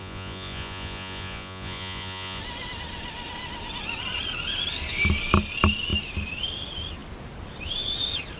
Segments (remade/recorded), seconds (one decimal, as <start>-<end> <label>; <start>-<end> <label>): 0.0-2.4 remade; 2.4-8.4 recorded